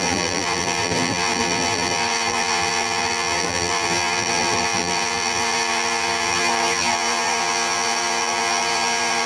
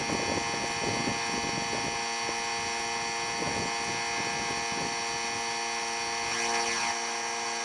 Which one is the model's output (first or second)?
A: first